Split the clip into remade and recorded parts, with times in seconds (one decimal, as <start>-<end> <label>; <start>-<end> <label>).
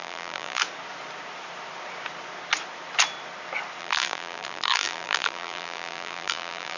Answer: 0.0-0.6 remade; 0.6-3.8 recorded; 3.8-6.8 remade